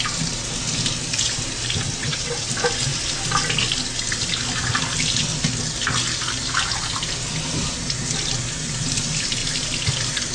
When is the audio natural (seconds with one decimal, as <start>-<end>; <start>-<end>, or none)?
0.0-2.0; 2.5-10.3